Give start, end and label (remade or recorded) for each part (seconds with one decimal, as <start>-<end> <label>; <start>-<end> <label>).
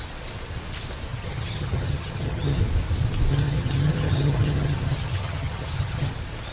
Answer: 0.0-1.1 recorded; 1.1-2.6 remade; 2.6-3.3 recorded; 3.3-6.1 remade; 6.1-6.5 recorded